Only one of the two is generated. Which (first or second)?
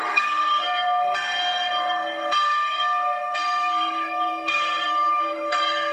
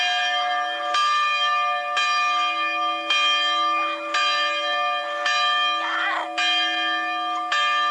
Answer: first